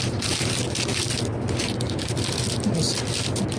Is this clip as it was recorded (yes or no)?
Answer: yes